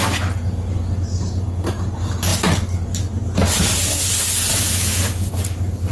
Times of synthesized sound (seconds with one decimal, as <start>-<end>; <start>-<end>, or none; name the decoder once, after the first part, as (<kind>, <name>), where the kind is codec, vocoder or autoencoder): 4.5-5.3 (autoencoder, DAC-VAE)